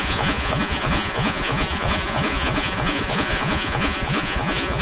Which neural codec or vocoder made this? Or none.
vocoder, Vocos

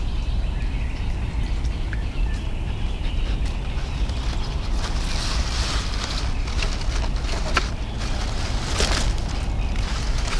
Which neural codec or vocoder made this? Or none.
none